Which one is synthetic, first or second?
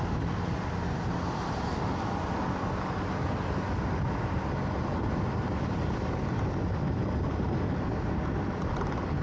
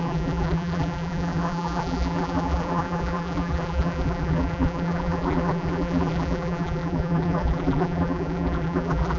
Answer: second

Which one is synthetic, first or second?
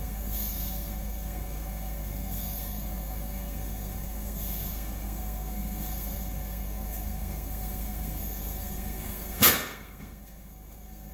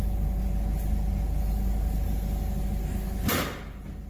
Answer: first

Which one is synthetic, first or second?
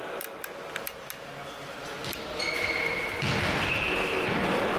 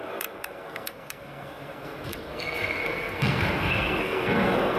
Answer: second